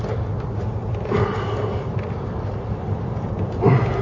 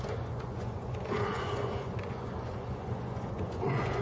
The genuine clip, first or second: first